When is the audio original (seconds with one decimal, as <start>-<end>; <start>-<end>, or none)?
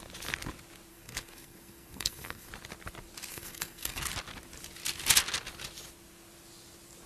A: 0.0-0.9; 2.5-3.3; 4.0-7.1